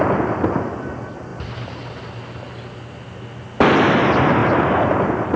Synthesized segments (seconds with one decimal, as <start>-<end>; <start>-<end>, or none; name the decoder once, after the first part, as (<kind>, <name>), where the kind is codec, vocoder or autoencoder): none